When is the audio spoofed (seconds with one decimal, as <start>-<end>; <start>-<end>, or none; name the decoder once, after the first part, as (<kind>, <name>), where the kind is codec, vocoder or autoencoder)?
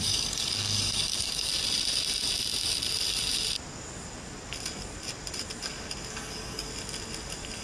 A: 0.0-1.5 (codec, DAC); 6.1-6.7